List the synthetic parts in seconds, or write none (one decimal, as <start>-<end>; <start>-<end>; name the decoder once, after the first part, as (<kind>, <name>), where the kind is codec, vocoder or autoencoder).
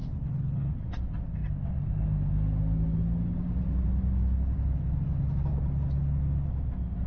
0.0-0.7 (codec, HILCodec)